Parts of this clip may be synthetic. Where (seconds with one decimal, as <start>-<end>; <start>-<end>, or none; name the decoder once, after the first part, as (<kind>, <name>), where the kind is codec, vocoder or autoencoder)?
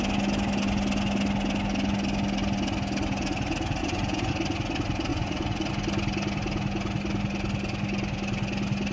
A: 3.8-4.3 (vocoder, Vocos); 5.1-5.7